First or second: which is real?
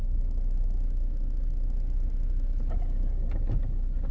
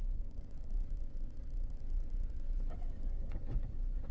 first